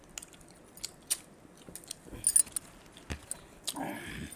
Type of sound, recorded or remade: recorded